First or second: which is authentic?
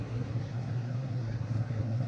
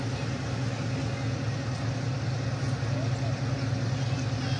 second